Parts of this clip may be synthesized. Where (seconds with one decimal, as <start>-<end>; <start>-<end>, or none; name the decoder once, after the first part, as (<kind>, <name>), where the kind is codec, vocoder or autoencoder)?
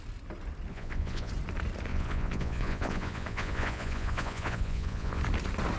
0.7-1.3 (vocoder, Vocos); 1.9-5.2